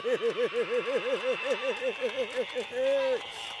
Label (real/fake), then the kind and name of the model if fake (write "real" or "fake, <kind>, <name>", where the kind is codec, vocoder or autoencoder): real